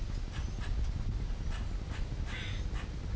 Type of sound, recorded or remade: recorded